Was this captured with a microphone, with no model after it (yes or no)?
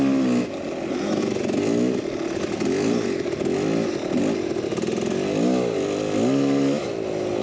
yes